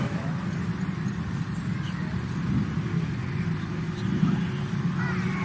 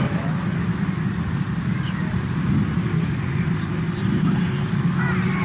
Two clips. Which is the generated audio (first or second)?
second